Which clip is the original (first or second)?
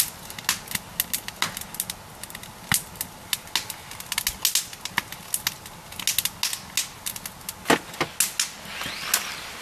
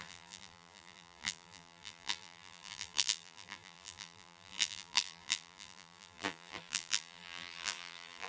first